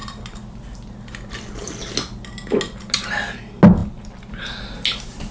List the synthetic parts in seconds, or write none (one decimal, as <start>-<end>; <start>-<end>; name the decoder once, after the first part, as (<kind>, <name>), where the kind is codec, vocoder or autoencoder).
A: none